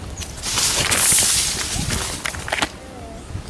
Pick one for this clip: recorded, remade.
recorded